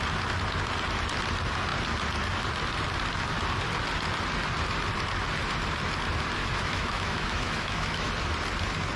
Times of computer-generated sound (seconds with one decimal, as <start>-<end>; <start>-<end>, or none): 6.4-8.1